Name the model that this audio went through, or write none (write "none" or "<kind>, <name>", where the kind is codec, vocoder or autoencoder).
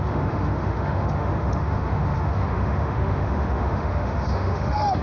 autoencoder, DAC-VAE